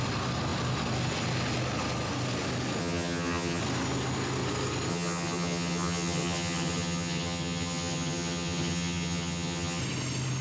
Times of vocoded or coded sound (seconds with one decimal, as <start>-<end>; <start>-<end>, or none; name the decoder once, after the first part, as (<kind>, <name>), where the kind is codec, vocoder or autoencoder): 2.8-3.6 (vocoder, HiFi-GAN); 4.9-9.8